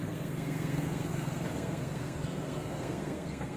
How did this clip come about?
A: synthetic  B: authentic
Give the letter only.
A